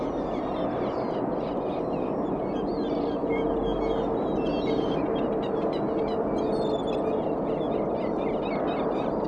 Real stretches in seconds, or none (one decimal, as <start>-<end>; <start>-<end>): 0.0-9.3

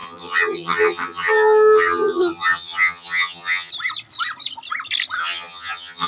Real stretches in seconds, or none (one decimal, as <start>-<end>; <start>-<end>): 3.7-5.2

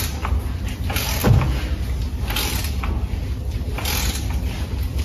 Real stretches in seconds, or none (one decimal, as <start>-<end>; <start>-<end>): 0.0-5.0

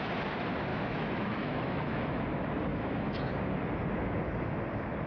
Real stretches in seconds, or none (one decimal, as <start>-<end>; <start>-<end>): 0.0-0.7; 2.2-2.7; 3.3-5.1

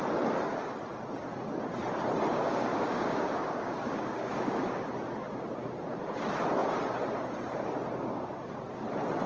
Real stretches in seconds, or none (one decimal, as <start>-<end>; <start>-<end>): 0.0-2.3; 4.8-9.3